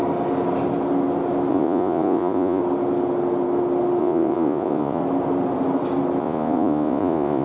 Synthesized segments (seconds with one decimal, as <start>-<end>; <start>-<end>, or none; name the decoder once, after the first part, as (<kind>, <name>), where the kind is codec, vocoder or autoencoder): 1.5-2.6 (vocoder, Vocos); 4.0-5.0; 6.2-7.4